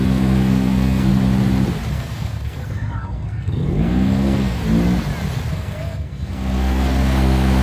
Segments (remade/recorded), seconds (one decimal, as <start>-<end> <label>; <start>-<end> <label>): 0.0-1.1 remade; 1.1-1.9 recorded; 1.9-4.6 remade; 4.6-5.5 recorded; 5.5-7.6 remade